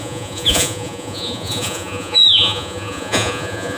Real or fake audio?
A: fake